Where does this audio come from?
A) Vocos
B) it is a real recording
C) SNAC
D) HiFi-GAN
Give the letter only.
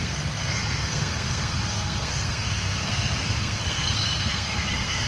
C